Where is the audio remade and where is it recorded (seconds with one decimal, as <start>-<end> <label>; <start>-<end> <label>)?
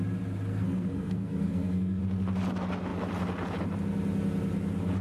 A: 0.0-0.5 recorded; 0.5-2.0 remade; 2.0-5.0 recorded